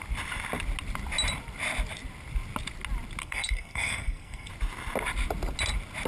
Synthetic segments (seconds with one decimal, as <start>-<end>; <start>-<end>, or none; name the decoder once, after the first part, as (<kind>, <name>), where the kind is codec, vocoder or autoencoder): 3.2-4.5 (codec, SNAC)